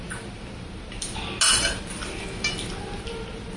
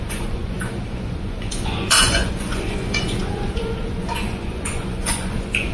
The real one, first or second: first